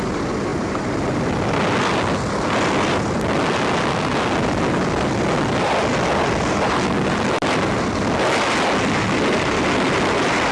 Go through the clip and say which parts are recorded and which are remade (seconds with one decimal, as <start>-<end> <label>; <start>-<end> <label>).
0.0-10.5 recorded